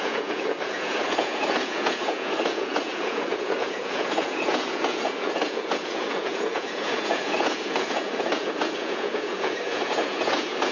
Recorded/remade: remade